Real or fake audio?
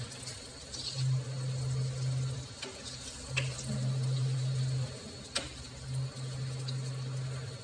real